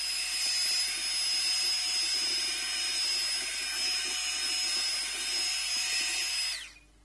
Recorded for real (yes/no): yes